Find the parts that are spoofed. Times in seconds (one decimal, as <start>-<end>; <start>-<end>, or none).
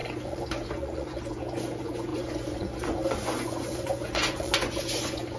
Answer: 0.0-5.4